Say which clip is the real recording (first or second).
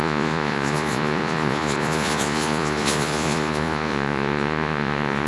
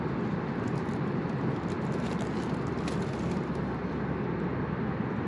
second